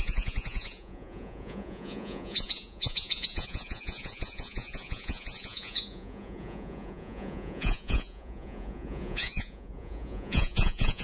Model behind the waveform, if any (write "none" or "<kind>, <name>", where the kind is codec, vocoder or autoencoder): vocoder, Vocos